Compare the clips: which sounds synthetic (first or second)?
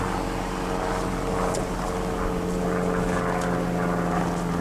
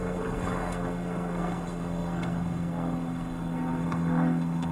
second